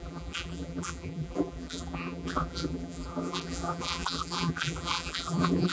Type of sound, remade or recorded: remade